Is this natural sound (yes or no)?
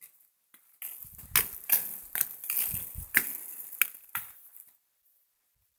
yes